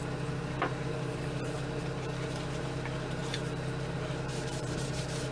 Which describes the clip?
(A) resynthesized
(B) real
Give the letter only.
A